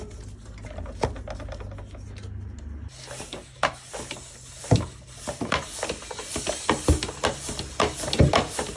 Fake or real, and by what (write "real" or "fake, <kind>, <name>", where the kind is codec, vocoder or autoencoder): real